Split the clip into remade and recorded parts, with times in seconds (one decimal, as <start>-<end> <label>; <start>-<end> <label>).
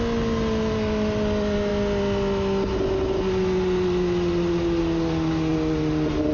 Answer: 0.0-6.3 recorded